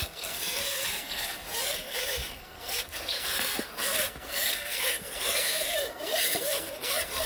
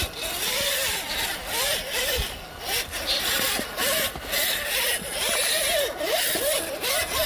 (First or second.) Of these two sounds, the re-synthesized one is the first